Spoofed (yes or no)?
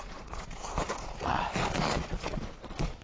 yes